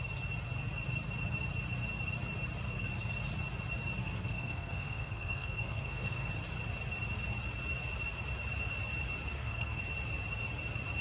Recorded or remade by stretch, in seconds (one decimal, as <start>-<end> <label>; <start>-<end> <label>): 0.0-4.0 recorded; 4.0-6.3 remade; 6.3-9.3 recorded; 9.3-9.8 remade; 9.8-11.0 recorded